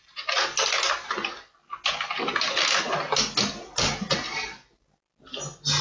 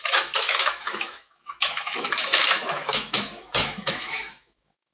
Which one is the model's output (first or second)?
second